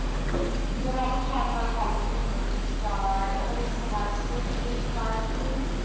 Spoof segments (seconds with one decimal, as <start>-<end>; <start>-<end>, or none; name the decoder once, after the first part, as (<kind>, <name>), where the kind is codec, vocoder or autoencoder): none